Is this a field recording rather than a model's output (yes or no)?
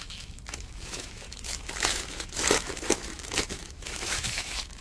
no